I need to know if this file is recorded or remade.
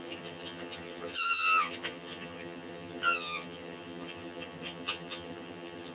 remade